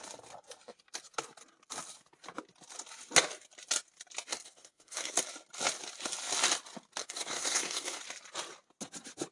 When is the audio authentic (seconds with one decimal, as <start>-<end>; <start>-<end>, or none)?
0.0-4.3; 5.1-7.0; 8.0-9.3